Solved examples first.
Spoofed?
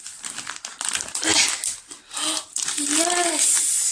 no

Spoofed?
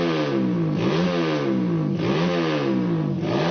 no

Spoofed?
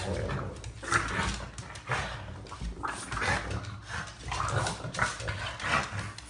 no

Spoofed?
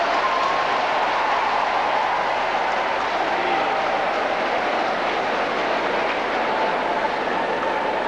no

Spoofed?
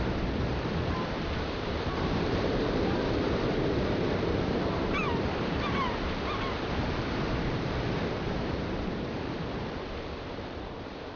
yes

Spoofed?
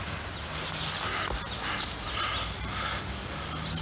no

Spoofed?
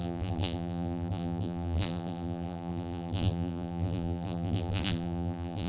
yes